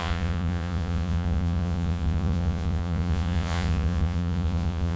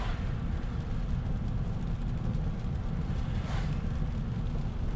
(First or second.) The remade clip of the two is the first